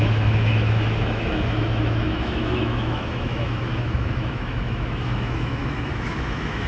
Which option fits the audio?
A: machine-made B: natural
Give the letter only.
A